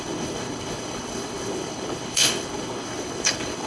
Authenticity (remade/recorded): remade